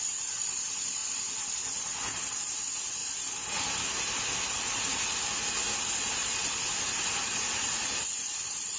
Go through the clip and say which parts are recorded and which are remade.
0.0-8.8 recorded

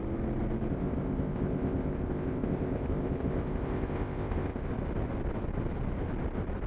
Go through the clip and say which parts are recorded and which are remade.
0.0-0.7 recorded; 0.7-4.7 remade; 4.7-6.7 recorded

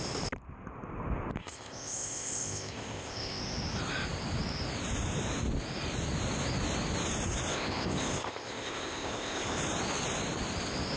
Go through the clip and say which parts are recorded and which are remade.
0.0-1.4 recorded; 1.4-3.4 remade; 3.4-7.5 recorded; 7.5-9.6 remade; 9.6-11.0 recorded

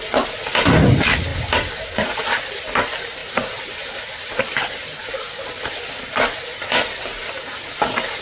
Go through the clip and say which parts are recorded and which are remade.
0.0-8.2 recorded

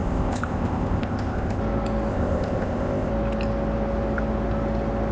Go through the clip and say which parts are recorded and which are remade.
0.0-1.6 remade; 1.6-2.1 recorded; 2.1-3.1 remade; 3.1-5.1 recorded

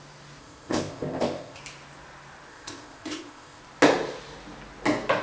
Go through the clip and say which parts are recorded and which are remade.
0.0-0.4 recorded; 0.4-1.6 remade; 1.6-2.5 recorded; 2.5-3.6 remade; 3.6-5.2 recorded